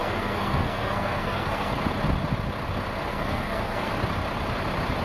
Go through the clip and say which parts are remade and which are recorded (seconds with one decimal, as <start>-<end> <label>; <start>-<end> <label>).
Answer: 0.0-1.7 remade; 1.7-3.1 recorded; 3.1-3.9 remade; 3.9-5.0 recorded